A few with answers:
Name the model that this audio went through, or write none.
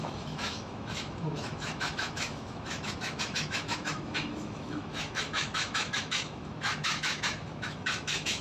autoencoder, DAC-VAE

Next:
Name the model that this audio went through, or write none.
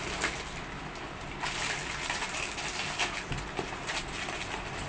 none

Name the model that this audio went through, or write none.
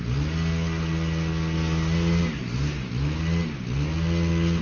none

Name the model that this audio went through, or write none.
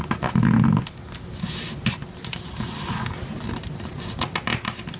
none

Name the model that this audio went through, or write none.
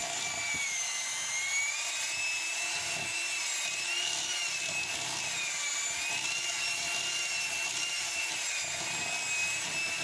none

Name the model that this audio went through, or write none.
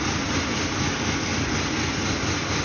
none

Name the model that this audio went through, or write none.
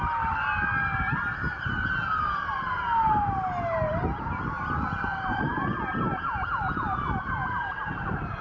none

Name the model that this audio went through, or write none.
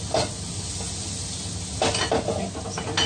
none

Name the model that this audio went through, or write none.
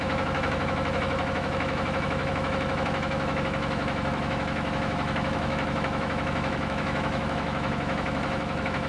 autoencoder, DAC-VAE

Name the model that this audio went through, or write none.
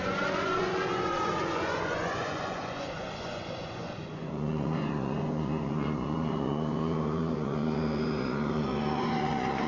vocoder, Vocos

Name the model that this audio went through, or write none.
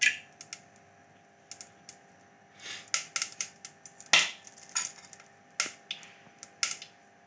none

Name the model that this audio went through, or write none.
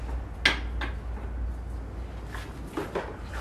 none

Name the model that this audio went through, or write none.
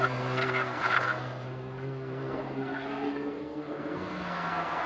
codec, SNAC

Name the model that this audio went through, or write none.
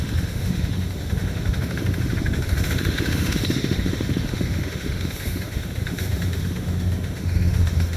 autoencoder, DAC-VAE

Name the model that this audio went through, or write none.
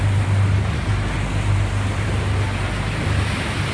none